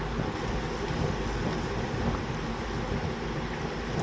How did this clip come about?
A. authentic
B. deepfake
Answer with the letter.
A